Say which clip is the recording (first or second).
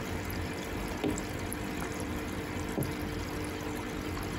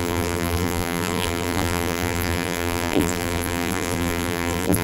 first